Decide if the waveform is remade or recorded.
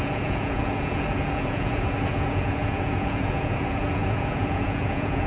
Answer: remade